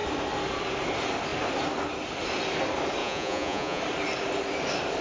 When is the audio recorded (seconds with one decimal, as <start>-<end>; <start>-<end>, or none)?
0.0-3.0; 3.8-5.0